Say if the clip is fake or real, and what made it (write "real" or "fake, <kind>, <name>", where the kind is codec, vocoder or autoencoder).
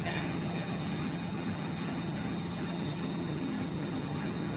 fake, vocoder, HiFi-GAN